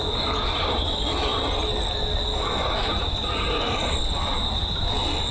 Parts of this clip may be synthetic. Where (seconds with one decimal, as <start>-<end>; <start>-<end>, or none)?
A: none